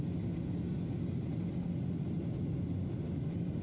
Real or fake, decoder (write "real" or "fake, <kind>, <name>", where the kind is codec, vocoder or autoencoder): real